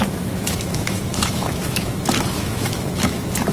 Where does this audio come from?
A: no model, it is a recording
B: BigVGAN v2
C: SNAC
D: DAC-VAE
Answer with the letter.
D